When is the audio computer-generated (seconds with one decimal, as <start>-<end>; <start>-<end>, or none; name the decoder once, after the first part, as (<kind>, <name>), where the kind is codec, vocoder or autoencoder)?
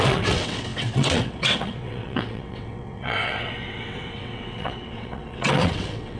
0.0-6.2 (vocoder, WaveNeXt)